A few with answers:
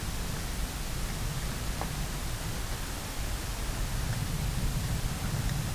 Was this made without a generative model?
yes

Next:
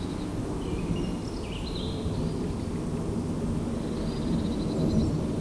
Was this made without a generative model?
yes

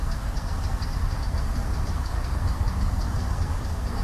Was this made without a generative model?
no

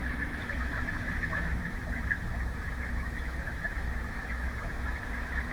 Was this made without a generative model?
no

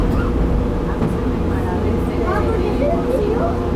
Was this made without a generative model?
yes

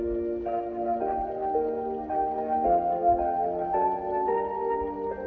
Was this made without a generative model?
yes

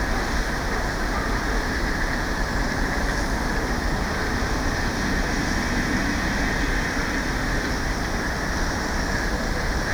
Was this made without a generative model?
yes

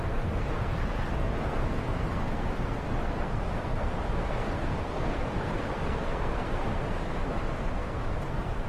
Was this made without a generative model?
no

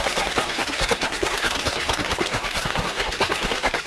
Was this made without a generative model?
no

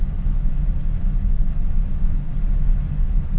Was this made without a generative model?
yes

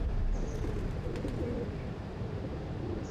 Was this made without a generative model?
no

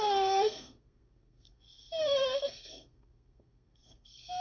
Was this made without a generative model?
no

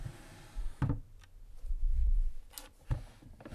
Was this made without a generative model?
yes